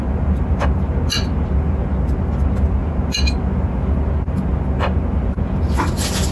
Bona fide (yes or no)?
yes